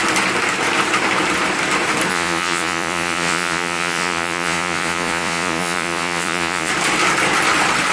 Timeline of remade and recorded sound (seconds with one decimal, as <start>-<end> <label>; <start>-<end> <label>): 0.0-2.1 recorded; 2.1-6.7 remade; 6.7-7.9 recorded